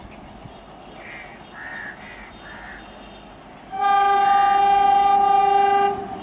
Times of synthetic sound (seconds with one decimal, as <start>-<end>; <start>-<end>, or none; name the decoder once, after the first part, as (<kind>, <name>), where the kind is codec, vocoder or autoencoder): none